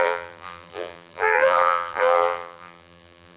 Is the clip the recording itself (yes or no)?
no